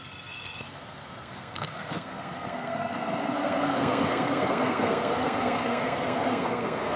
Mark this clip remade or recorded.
remade